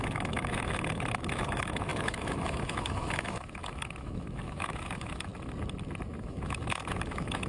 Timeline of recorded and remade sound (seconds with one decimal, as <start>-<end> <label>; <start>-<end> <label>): 0.0-5.3 remade; 5.3-6.2 recorded; 6.2-7.5 remade